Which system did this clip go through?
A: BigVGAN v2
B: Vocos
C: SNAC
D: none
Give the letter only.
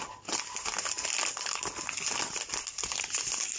D